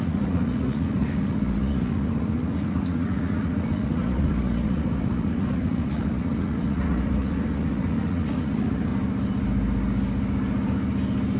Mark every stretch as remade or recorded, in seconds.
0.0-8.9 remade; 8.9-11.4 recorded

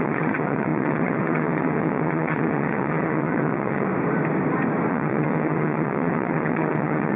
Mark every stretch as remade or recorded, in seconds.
0.0-3.9 remade; 3.9-4.9 recorded; 4.9-7.2 remade

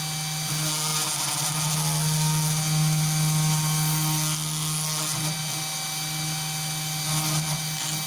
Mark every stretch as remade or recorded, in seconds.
0.0-8.1 recorded

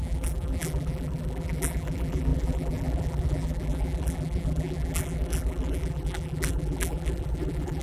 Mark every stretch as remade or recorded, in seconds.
0.0-7.8 remade

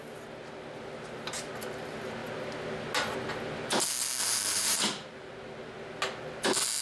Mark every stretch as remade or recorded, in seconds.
0.0-4.2 recorded; 4.2-5.3 remade; 5.3-6.8 recorded

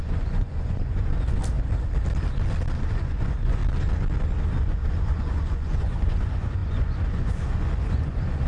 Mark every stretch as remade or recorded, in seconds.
0.0-1.4 remade; 1.4-2.8 recorded; 2.8-3.6 remade; 3.6-4.6 recorded; 4.6-8.5 remade

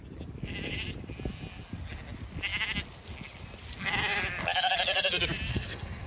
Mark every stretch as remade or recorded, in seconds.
0.0-5.5 recorded; 5.5-6.1 remade